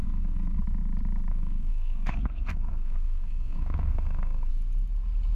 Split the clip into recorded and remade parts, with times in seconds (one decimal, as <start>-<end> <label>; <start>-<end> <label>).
0.0-0.6 remade; 0.6-1.3 recorded; 1.3-4.5 remade; 4.5-5.3 recorded